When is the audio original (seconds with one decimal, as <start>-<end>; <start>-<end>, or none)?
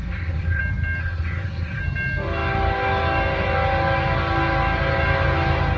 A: 0.6-1.0; 1.8-5.8